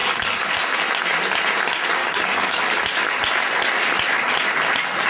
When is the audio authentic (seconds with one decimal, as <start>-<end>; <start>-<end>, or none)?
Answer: 0.5-2.0; 2.8-5.1

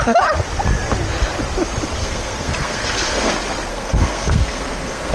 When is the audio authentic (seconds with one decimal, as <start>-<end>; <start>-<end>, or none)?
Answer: 0.0-2.0; 3.3-3.7

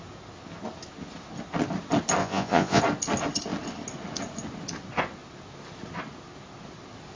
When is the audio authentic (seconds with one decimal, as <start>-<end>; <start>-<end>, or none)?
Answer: 0.0-2.2; 2.8-7.2

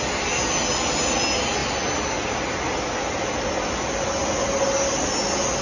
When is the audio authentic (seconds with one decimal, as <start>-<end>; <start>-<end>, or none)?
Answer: 0.0-5.6

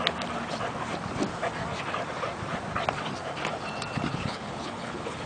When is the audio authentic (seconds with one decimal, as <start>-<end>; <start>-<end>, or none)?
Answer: 0.0-4.1

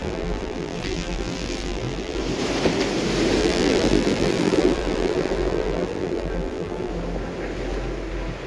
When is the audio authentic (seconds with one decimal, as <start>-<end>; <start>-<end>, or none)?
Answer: 2.2-3.4; 6.9-8.5

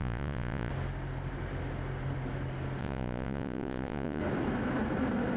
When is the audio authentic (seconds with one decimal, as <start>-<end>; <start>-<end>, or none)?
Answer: 0.7-2.8; 4.2-5.4